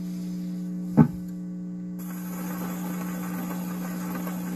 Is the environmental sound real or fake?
real